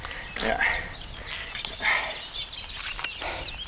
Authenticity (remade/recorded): recorded